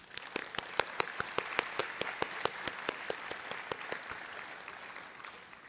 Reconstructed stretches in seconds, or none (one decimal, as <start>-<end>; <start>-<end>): 0.4-1.3